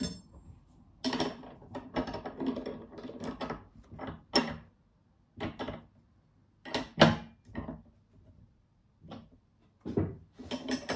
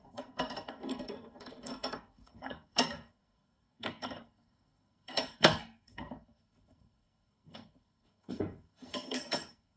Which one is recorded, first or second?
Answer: first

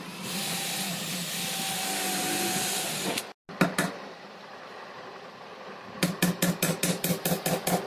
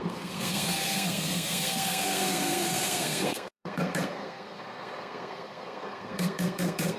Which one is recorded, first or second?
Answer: first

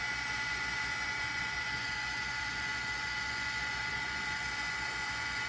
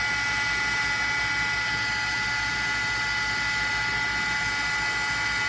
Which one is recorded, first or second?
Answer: second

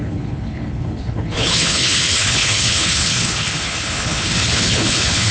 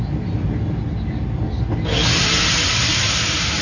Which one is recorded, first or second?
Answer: second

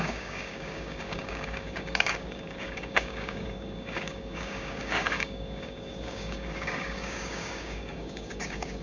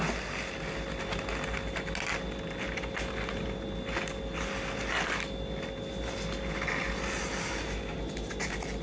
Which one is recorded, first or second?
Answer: second